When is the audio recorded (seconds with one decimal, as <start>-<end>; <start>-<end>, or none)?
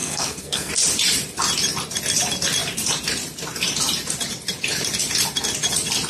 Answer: 0.7-6.1